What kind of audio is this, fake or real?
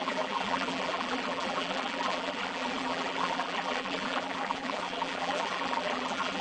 fake